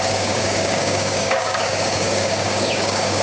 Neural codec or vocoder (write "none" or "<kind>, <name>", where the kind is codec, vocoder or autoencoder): codec, DAC